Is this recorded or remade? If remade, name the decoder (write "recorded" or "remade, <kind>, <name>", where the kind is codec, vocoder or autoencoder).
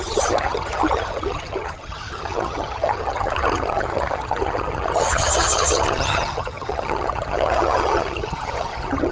remade, vocoder, HiFi-GAN